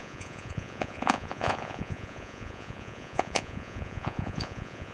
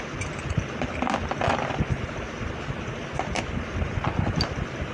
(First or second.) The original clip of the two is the second